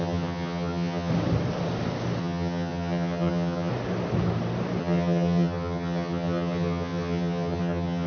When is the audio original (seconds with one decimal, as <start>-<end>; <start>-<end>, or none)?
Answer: 1.1-2.2; 3.7-4.8